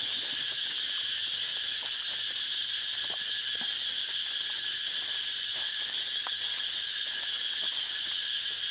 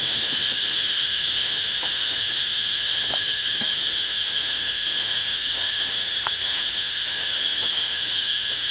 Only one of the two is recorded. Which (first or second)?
first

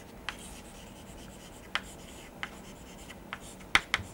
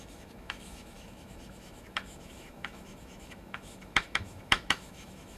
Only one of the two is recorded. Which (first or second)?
first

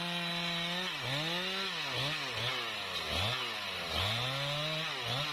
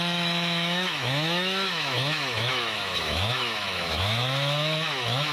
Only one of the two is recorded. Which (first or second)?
first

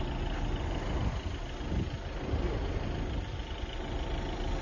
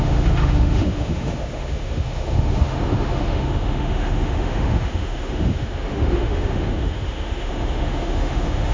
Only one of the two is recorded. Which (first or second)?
first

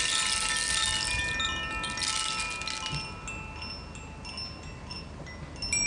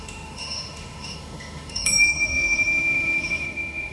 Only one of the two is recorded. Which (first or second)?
first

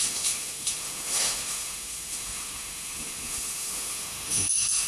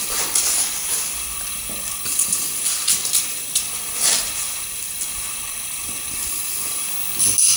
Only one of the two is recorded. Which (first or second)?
second